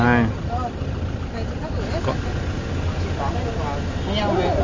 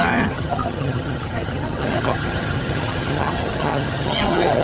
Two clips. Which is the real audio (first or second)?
first